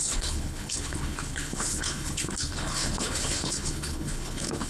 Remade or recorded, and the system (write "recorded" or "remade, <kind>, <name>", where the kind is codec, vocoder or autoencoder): remade, codec, HILCodec